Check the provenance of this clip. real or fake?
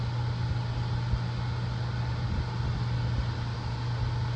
real